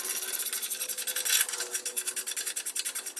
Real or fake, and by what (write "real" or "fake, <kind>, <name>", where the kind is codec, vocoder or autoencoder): real